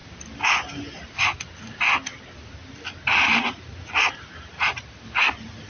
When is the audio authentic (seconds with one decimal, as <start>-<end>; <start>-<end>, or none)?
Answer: 0.0-2.6; 3.6-5.7